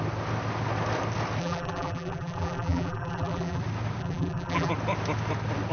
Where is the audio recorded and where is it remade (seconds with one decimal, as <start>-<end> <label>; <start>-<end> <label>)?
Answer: 0.0-1.4 recorded; 1.4-3.6 remade; 3.6-4.0 recorded; 4.0-4.7 remade; 4.7-5.7 recorded